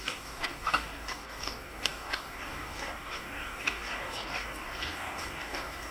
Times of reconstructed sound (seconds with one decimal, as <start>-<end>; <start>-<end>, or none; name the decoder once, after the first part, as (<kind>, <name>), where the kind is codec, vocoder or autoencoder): 0.0-5.9 (codec, DAC)

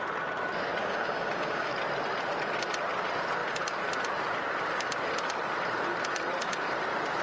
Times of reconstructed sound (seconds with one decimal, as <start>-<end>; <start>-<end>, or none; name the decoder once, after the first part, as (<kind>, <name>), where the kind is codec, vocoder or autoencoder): 0.8-1.7 (codec, DAC)

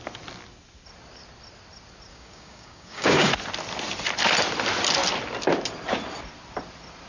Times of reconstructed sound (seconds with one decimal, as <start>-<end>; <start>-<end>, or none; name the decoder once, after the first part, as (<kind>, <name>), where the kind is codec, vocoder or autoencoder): 2.1-3.3 (codec, DAC)

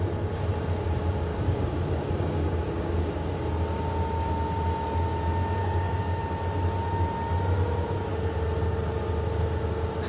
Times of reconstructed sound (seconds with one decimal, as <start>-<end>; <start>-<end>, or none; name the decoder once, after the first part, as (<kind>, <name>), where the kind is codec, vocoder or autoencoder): 1.3-3.1 (codec, DAC); 5.6-6.2

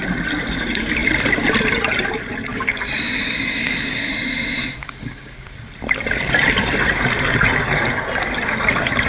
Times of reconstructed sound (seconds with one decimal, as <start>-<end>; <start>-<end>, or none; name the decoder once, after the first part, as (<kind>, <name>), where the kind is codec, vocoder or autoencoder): 2.5-4.1 (codec, DAC); 4.8-5.7

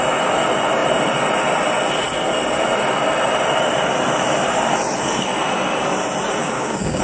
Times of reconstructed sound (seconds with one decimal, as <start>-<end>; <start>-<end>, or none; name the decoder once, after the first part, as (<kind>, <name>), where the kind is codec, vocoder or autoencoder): 6.4-7.0 (codec, DAC)

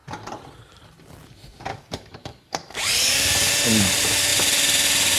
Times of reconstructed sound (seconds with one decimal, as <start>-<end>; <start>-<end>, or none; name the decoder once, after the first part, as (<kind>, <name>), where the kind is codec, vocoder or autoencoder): 1.7-3.5 (codec, DAC)

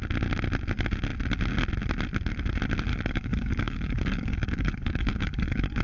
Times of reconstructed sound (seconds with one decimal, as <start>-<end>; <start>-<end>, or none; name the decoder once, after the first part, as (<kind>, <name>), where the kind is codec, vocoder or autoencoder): 2.9-5.8 (codec, DAC)